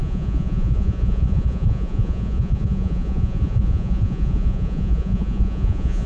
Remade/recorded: remade